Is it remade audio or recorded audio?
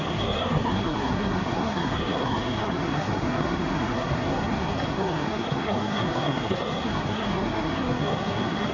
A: remade